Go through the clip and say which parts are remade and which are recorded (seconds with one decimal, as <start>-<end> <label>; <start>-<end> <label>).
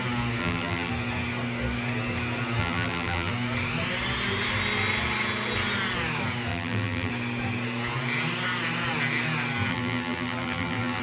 0.0-0.4 recorded; 0.4-0.9 remade; 0.9-2.6 recorded; 2.6-3.3 remade; 3.3-6.5 recorded; 6.5-7.1 remade; 7.1-9.7 recorded; 9.7-11.0 remade